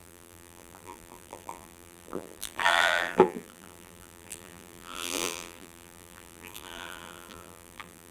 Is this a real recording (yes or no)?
no